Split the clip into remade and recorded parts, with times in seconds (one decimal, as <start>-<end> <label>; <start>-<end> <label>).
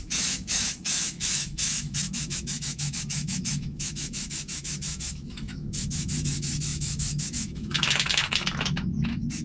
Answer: 0.0-9.4 remade